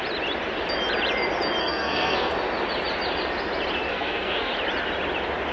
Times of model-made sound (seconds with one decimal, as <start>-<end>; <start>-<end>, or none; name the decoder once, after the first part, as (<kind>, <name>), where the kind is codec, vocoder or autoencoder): 1.6-2.3 (codec, SNAC); 3.9-4.5